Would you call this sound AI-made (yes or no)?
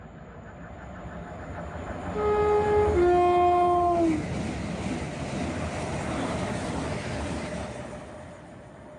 no